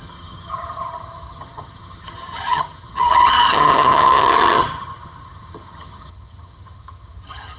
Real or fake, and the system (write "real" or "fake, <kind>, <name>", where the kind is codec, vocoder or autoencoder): fake, vocoder, HiFi-GAN